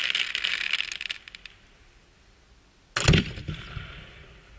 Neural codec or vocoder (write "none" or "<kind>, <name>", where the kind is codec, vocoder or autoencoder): none